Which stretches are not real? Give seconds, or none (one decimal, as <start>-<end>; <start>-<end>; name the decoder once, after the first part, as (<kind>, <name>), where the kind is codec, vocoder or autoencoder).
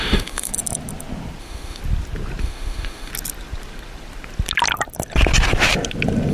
0.0-0.5 (autoencoder, DAC-VAE); 1.4-1.8; 2.4-3.1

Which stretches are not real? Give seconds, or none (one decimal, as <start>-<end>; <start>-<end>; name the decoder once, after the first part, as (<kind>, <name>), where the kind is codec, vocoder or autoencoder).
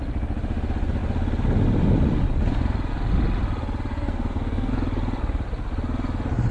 3.9-4.7 (codec, SNAC)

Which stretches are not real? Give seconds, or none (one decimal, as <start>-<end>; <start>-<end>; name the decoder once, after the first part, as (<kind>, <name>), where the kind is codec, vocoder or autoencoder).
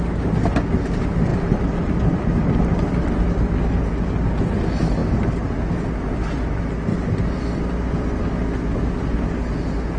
1.3-3.5 (vocoder, BigVGAN v2); 6.9-7.6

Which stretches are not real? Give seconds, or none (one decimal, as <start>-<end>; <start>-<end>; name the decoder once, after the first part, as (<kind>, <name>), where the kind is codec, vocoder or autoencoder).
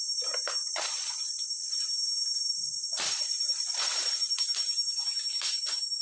0.6-1.8 (vocoder, Vocos); 2.5-4.1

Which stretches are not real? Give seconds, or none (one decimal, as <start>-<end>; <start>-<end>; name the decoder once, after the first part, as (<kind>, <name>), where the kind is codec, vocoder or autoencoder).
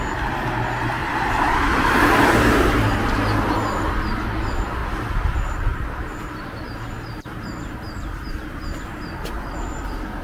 1.0-2.8 (vocoder, BigVGAN v2); 4.8-8.3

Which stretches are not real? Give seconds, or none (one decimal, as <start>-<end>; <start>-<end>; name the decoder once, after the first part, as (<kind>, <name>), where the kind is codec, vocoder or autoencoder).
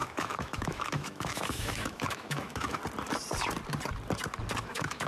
0.0-2.8 (autoencoder, DAC-VAE); 4.6-5.1